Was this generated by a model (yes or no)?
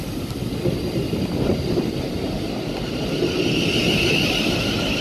no